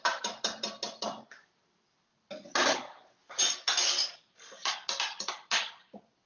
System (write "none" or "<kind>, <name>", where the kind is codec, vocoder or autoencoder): none